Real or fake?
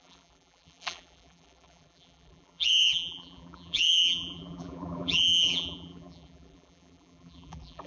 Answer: fake